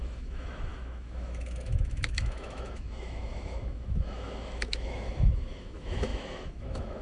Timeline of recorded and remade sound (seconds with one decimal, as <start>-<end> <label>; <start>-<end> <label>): 0.0-7.0 remade